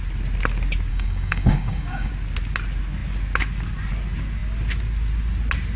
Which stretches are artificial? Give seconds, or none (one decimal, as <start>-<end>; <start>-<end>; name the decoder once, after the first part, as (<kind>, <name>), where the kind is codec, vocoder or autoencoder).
0.9-2.1 (codec, DAC)